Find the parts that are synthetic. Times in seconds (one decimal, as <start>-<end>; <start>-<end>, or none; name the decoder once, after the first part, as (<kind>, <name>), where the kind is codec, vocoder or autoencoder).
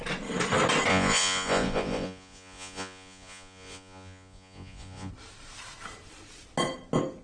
0.9-5.1 (vocoder, Vocos)